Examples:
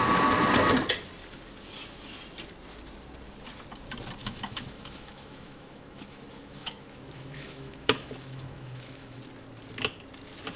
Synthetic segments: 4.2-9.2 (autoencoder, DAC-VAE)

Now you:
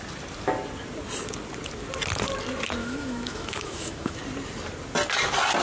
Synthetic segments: 2.8-4.2 (autoencoder, DAC-VAE)

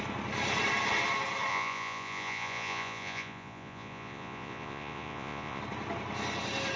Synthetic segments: 1.5-5.6 (vocoder, Vocos)

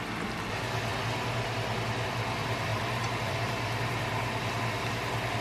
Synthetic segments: 2.7-3.4 (vocoder, BigVGAN v2)

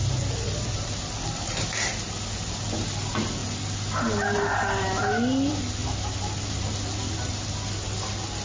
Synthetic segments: none